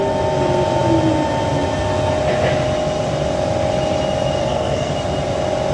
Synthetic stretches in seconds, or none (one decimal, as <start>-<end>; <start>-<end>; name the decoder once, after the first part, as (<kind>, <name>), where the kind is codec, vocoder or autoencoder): 4.4-4.9 (codec, SNAC)